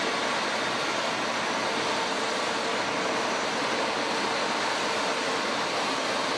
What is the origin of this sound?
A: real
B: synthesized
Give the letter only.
A